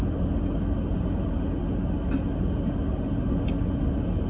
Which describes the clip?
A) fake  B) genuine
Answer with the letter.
B